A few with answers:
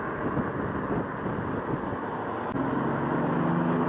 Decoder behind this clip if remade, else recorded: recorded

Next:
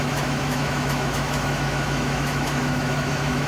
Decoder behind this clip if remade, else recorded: remade, autoencoder, DAC-VAE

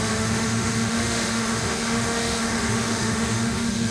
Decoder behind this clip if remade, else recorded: remade, autoencoder, DAC-VAE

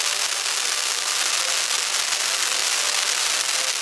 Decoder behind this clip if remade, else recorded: recorded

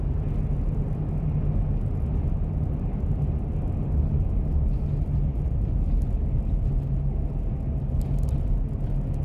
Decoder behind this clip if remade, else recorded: recorded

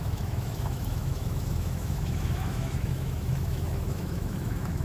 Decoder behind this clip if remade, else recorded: remade, autoencoder, DAC-VAE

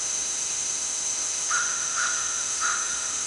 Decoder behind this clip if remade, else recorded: remade, autoencoder, DAC-VAE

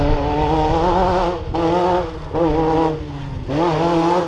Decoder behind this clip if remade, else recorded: recorded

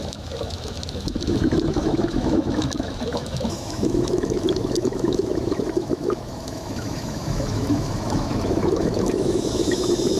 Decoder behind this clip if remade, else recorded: remade, autoencoder, DAC-VAE